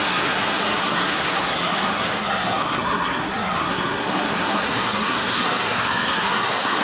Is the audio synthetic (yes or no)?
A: yes